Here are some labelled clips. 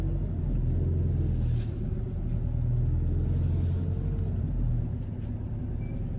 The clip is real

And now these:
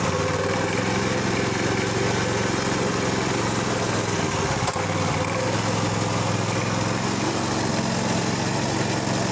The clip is real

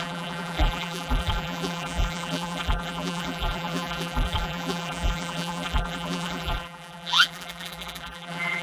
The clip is fake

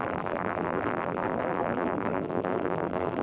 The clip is fake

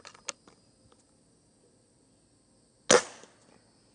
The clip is real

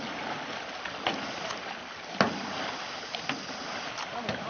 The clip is real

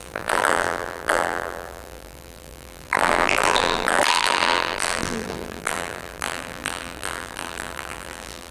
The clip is fake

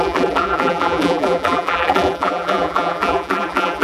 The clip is fake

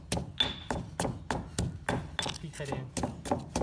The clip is real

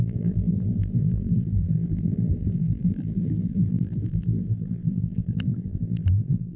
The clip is fake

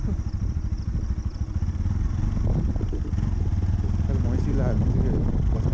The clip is real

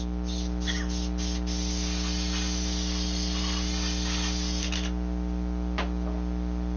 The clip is real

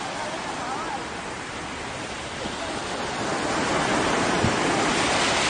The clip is real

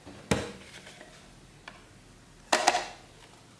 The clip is real